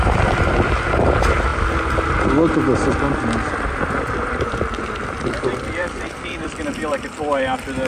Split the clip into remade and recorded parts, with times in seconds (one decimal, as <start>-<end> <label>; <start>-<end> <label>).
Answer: 0.0-1.5 remade; 1.5-3.5 recorded; 3.5-7.9 remade